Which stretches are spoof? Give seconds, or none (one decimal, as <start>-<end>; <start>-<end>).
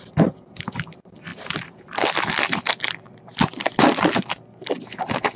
0.0-3.3; 4.0-5.4